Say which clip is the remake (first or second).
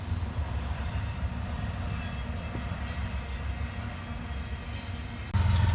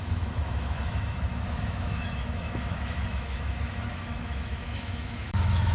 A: second